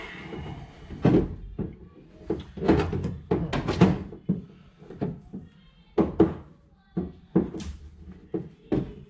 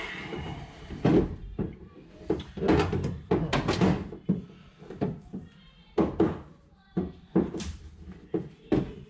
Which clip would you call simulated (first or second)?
second